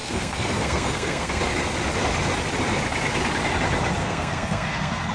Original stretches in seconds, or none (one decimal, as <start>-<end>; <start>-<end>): 1.4-4.0